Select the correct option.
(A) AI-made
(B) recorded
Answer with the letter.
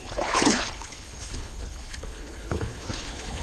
A